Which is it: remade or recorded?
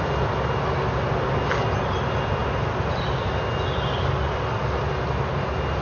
recorded